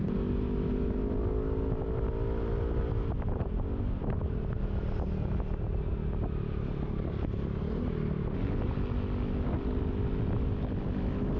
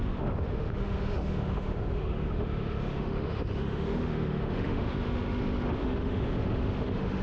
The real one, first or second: first